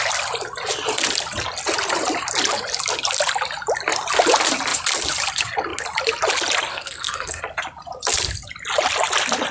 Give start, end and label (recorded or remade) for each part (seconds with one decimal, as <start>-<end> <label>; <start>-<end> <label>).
0.0-6.7 recorded; 6.7-7.4 remade; 7.4-9.5 recorded

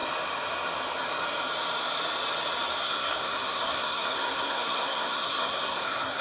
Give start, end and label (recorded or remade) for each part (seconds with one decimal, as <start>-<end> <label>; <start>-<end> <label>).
0.0-2.8 recorded; 2.8-6.2 remade

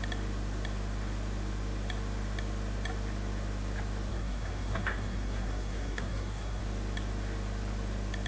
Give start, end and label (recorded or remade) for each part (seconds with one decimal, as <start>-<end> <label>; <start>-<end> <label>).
0.0-4.1 recorded; 4.1-6.6 remade; 6.6-8.3 recorded

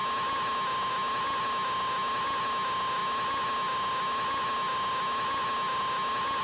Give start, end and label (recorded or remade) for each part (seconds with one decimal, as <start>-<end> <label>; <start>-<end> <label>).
0.0-6.4 recorded

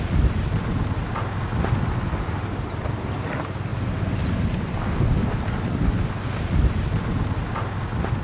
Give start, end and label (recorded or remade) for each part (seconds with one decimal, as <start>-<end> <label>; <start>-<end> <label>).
0.0-8.2 recorded

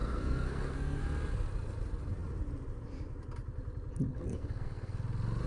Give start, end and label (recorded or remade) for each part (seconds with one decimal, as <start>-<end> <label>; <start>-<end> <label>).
0.0-1.0 remade; 1.0-4.1 recorded; 4.1-5.0 remade; 5.0-5.5 recorded

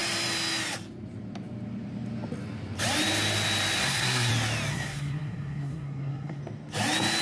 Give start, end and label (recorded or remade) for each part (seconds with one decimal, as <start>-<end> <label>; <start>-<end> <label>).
0.0-3.8 recorded; 3.8-4.3 remade; 4.3-4.7 recorded; 4.7-6.4 remade; 6.4-7.2 recorded